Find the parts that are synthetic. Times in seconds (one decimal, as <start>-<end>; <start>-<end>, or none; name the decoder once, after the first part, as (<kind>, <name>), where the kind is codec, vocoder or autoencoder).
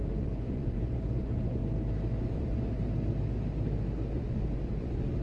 0.0-1.6 (vocoder, Vocos); 2.2-2.8; 4.1-5.2